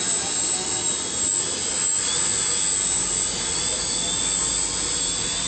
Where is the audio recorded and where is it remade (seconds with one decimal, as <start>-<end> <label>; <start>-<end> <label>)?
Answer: 0.0-5.5 recorded